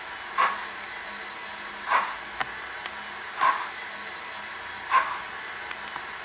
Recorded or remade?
recorded